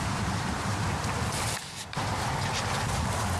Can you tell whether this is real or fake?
fake